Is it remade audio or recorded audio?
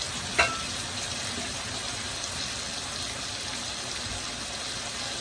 recorded